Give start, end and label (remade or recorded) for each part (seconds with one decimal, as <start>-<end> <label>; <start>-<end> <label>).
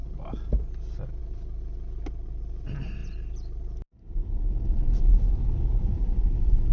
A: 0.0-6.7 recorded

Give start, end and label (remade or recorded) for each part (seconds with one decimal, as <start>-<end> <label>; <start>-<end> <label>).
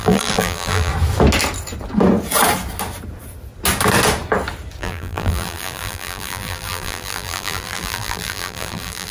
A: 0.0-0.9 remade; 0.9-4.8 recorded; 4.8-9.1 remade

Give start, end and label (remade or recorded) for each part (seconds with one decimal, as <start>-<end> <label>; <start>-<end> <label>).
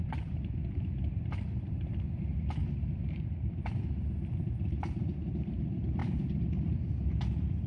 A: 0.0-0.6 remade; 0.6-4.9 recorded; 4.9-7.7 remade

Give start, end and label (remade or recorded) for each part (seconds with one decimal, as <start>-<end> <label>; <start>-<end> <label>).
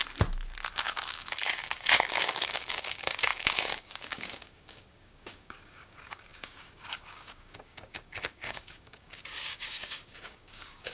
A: 0.0-0.7 recorded; 0.7-10.9 remade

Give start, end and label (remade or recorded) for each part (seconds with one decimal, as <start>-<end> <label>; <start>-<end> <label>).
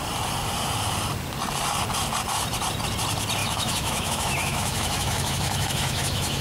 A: 0.0-3.4 recorded; 3.4-6.4 remade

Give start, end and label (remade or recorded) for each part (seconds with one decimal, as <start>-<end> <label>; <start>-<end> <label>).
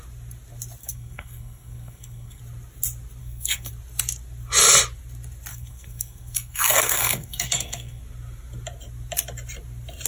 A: 0.0-0.8 recorded; 0.8-2.4 remade; 2.4-3.2 recorded; 3.2-3.7 remade; 3.7-5.5 recorded; 5.5-8.0 remade; 8.0-10.1 recorded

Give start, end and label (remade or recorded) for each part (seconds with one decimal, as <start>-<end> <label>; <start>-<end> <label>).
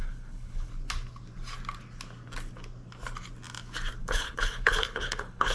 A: 0.0-0.7 remade; 0.7-4.0 recorded; 4.0-5.5 remade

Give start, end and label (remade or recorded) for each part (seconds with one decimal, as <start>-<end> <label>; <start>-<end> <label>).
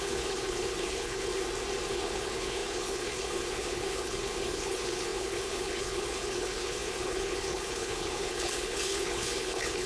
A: 0.0-1.3 remade; 1.3-1.9 recorded; 1.9-9.9 remade